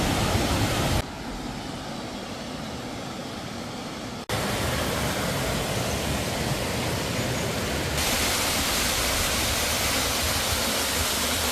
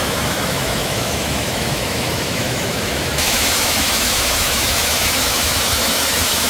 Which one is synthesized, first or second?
second